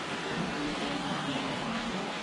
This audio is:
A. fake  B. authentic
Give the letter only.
A